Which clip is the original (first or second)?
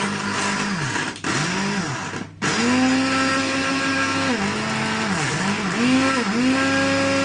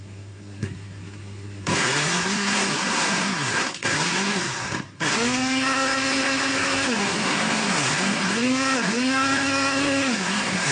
first